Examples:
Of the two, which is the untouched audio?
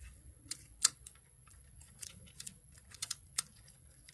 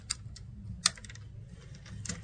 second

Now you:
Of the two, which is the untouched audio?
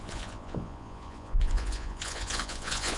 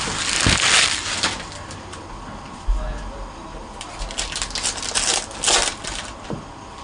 second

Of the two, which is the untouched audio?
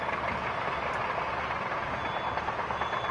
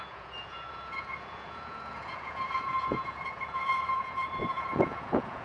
first